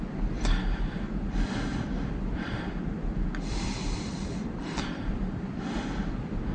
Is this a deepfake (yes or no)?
yes